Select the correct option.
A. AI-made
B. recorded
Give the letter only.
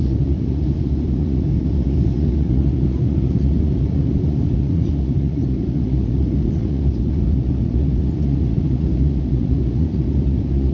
A